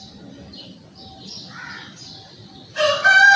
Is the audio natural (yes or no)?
yes